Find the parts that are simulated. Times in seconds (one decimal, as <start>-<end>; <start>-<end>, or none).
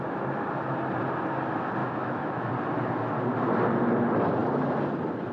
1.8-2.5